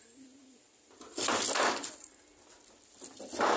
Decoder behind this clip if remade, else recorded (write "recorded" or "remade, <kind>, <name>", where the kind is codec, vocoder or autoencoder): recorded